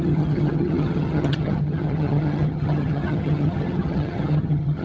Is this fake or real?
fake